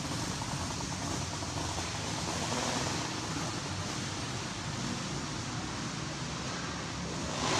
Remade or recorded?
recorded